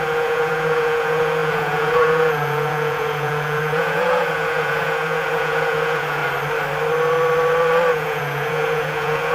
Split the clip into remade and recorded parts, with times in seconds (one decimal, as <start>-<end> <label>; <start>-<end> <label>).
0.0-6.2 remade; 6.2-7.9 recorded; 7.9-9.3 remade

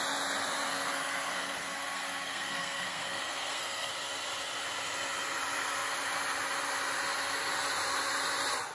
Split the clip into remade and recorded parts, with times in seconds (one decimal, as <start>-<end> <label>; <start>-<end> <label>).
0.0-0.7 recorded; 0.7-3.9 remade; 3.9-8.7 recorded

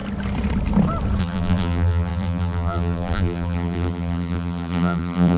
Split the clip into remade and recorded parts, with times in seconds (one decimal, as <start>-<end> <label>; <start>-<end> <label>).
0.0-1.2 recorded; 1.2-5.4 remade

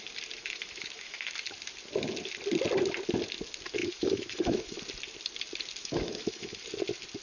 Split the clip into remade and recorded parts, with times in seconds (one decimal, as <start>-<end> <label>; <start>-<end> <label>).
0.0-0.4 recorded; 0.4-1.3 remade; 1.3-3.8 recorded; 3.8-4.8 remade; 4.8-5.8 recorded; 5.8-6.6 remade; 6.6-7.2 recorded

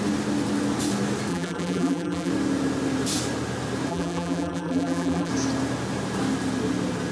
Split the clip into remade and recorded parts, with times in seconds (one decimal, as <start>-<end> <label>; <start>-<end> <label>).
0.0-1.3 recorded; 1.3-2.3 remade; 2.3-3.9 recorded; 3.9-5.3 remade; 5.3-7.1 recorded

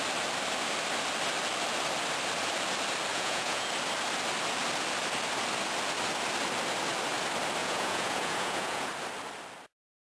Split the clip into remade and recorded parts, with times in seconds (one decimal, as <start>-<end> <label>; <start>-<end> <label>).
0.0-3.1 recorded; 3.1-3.7 remade; 3.7-7.6 recorded; 7.6-8.9 remade; 8.9-10.1 recorded

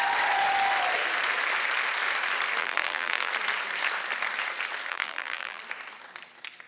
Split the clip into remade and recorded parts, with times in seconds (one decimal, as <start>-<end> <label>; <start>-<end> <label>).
0.0-2.6 recorded; 2.6-3.3 remade; 3.3-4.9 recorded; 4.9-5.6 remade; 5.6-6.7 recorded